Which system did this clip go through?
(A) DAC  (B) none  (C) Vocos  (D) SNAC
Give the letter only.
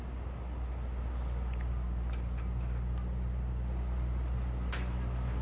B